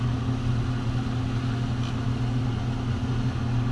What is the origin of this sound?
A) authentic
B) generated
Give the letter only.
A